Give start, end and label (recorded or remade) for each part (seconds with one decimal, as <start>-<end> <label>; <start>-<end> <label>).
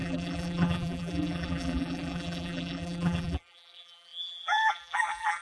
0.0-5.4 remade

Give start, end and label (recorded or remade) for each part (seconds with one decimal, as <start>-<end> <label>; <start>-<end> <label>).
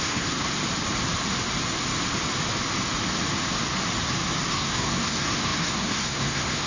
0.0-0.5 remade; 0.5-4.5 recorded; 4.5-6.7 remade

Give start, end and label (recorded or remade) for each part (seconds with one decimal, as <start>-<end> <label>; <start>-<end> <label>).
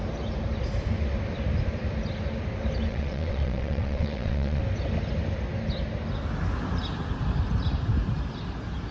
0.0-2.9 recorded; 2.9-4.6 remade; 4.6-8.9 recorded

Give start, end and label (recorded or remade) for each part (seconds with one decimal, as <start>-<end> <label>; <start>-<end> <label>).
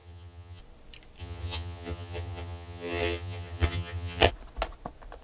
0.0-0.6 remade; 0.6-1.2 recorded; 1.2-4.3 remade; 4.3-5.2 recorded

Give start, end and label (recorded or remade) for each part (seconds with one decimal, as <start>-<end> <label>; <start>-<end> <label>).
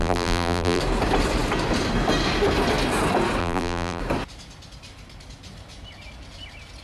0.0-0.8 remade; 0.8-3.4 recorded; 3.4-4.0 remade; 4.0-6.8 recorded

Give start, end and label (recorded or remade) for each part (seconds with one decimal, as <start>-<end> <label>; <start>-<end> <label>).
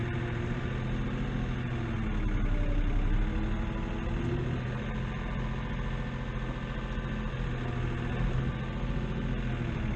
0.0-0.6 remade; 0.6-10.0 recorded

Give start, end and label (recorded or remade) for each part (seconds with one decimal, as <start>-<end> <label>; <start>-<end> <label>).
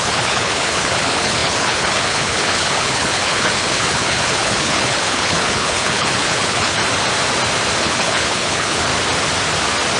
0.0-6.8 remade; 6.8-7.8 recorded; 7.8-8.9 remade; 8.9-10.0 recorded